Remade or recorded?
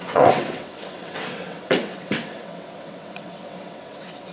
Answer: remade